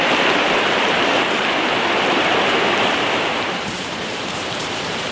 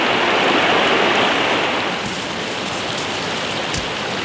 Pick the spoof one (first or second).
first